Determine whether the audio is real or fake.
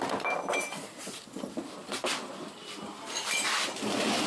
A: real